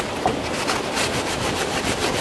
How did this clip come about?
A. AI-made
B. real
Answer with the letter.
B